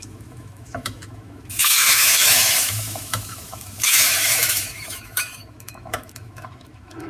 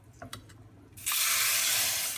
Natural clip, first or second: second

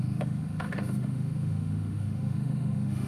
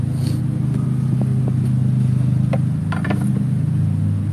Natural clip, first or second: second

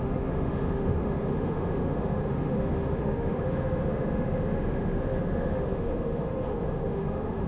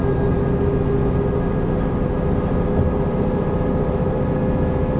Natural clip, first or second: second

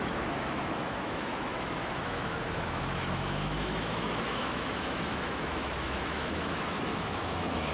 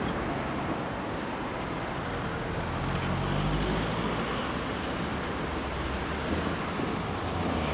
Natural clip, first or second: second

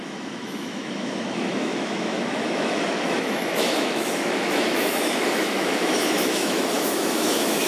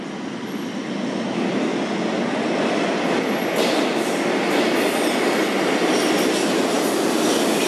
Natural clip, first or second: second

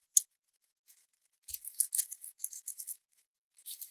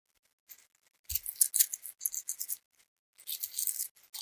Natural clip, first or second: second